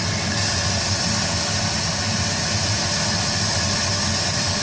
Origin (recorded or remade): recorded